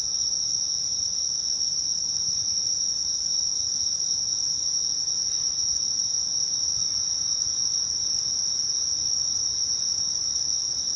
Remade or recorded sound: recorded